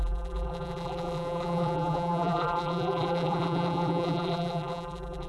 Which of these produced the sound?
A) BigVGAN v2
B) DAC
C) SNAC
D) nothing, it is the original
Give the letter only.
A